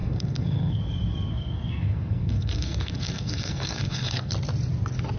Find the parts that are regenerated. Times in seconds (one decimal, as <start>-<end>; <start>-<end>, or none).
0.0-0.8; 1.3-4.3